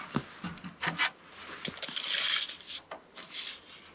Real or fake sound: real